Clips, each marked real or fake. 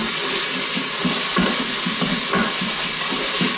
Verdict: real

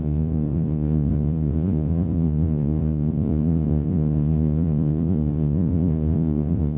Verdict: fake